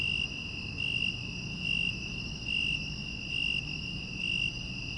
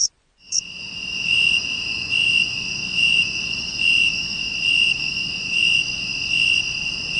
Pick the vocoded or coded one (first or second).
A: second